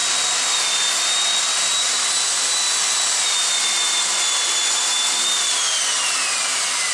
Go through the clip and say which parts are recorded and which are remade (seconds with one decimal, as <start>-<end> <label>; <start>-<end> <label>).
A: 0.0-6.9 recorded